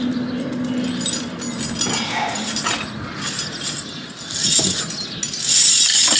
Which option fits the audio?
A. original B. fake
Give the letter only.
A